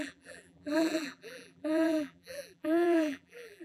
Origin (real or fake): fake